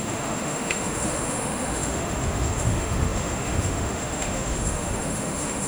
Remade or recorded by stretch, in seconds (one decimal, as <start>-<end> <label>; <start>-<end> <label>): 0.0-5.7 remade